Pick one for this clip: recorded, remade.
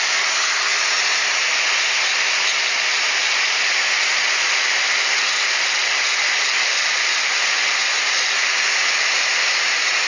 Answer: recorded